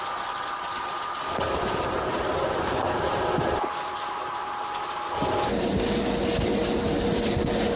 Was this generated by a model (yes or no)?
no